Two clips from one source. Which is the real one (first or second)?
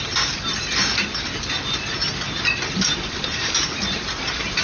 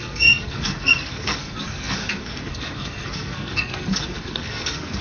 first